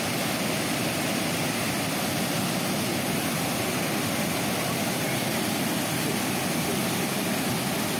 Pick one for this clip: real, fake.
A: real